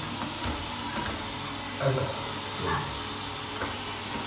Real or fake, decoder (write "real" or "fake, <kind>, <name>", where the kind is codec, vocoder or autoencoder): real